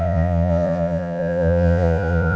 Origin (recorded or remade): remade